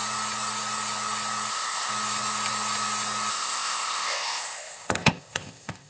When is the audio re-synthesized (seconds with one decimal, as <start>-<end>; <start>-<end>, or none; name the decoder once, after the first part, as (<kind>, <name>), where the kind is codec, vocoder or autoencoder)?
1.5-1.9 (codec, ZipCodec); 3.3-5.9